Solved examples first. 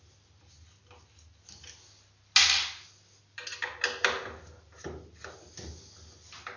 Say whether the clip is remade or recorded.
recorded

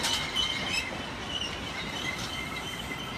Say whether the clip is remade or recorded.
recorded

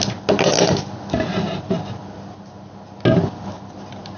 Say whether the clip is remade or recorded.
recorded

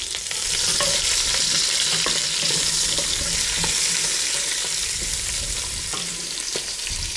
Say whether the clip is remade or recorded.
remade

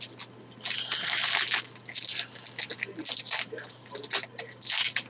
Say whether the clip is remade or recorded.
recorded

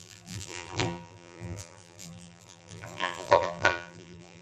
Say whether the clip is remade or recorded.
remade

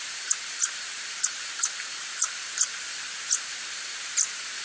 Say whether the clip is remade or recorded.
remade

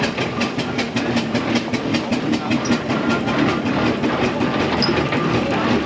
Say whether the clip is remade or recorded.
remade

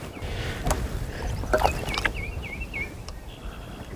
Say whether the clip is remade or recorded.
remade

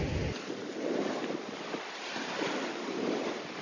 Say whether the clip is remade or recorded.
remade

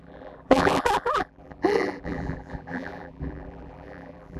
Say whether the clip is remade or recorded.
remade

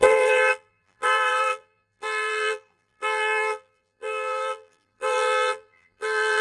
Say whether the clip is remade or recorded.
remade